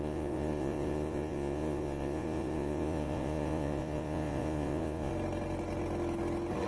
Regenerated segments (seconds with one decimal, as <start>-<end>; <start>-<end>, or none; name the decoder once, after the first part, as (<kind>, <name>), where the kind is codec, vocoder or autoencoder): 0.0-5.1 (vocoder, Vocos)